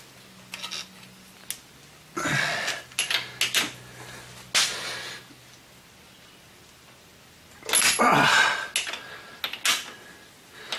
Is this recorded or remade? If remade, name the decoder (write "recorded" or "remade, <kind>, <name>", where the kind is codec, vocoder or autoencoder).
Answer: recorded